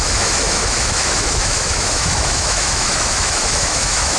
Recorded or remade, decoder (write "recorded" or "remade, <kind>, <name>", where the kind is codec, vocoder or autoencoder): remade, autoencoder, DAC-VAE